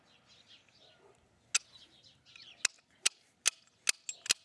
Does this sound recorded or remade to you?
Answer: recorded